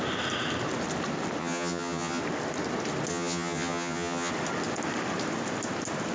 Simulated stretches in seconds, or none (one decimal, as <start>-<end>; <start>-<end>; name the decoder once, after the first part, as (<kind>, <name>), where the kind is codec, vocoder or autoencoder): 1.4-2.2 (vocoder, HiFi-GAN); 3.1-4.3